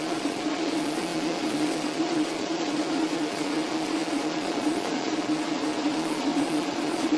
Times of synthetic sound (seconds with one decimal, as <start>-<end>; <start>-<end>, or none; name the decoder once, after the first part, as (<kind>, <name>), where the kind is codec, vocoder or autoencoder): 0.0-7.2 (vocoder, Vocos)